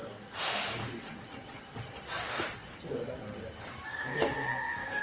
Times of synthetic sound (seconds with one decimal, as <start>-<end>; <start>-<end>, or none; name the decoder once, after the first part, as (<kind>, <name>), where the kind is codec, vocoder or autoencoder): 3.9-5.0 (codec, SNAC)